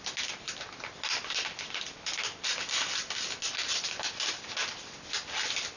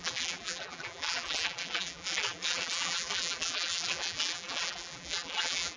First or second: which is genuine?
first